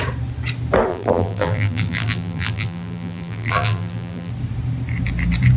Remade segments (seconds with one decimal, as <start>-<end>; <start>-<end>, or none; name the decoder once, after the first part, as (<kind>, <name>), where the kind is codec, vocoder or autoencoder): 0.9-4.3 (vocoder, BigVGAN v2)